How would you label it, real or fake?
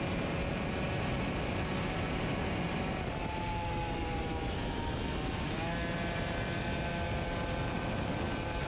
real